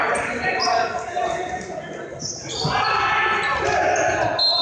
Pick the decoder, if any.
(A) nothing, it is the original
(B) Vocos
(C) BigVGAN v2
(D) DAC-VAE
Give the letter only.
A